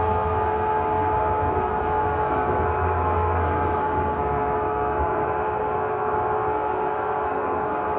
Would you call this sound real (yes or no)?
no